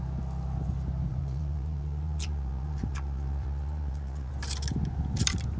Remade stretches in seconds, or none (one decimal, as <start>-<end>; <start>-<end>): 1.1-4.3